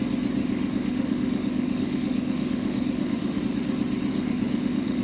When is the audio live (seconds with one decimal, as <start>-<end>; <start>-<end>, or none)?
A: 0.0-0.4; 3.4-4.1